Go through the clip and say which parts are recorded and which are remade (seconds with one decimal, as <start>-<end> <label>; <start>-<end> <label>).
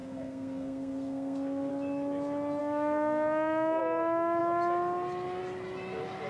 0.0-1.7 remade; 1.7-2.6 recorded; 2.6-3.8 remade; 3.8-6.3 recorded